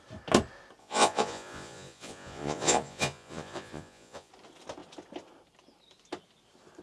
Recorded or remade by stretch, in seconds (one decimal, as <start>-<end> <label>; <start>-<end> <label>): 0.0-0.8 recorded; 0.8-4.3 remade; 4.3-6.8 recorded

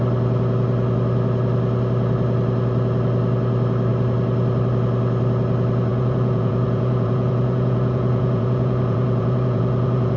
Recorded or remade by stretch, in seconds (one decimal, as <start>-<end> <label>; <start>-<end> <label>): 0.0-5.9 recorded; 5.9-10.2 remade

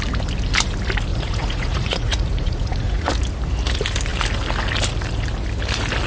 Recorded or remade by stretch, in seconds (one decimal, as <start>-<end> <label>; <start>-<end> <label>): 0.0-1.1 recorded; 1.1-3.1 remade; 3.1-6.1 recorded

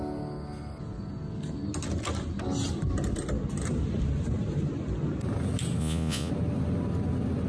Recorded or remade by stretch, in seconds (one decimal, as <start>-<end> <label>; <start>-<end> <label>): 0.0-5.8 recorded; 5.8-6.3 remade; 6.3-7.5 recorded

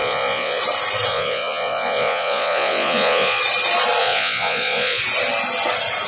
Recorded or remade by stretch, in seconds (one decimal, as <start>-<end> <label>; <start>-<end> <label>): 0.0-0.6 remade; 0.6-1.1 recorded; 1.1-3.4 remade; 3.4-4.0 recorded; 4.0-5.0 remade; 5.0-6.1 recorded